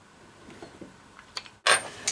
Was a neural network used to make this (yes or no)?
no